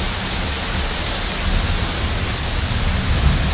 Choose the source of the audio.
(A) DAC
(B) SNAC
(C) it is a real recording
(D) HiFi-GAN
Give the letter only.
C